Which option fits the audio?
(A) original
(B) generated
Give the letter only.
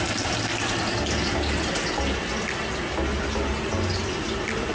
A